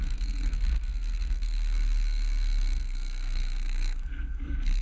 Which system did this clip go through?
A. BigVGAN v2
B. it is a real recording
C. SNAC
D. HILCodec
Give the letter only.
C